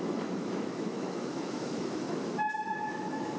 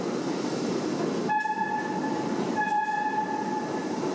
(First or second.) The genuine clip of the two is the second